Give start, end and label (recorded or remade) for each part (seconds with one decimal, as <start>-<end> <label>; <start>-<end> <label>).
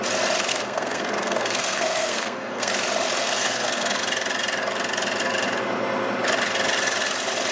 0.0-0.5 recorded; 0.5-2.7 remade; 2.7-3.2 recorded; 3.2-4.0 remade; 4.0-7.5 recorded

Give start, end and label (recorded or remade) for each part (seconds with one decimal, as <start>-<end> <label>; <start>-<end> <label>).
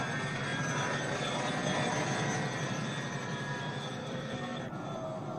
0.0-4.0 recorded; 4.0-4.6 remade; 4.6-5.4 recorded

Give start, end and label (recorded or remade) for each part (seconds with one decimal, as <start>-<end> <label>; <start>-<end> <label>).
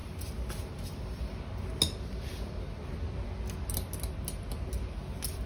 0.0-5.5 recorded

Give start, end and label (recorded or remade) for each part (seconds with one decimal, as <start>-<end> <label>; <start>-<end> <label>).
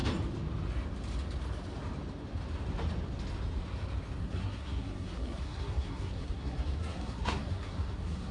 0.0-4.2 recorded; 4.2-8.3 remade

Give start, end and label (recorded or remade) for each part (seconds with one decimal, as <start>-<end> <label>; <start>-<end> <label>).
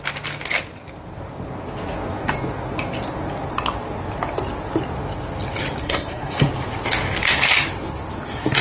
0.0-5.8 recorded; 5.8-6.5 remade; 6.5-8.6 recorded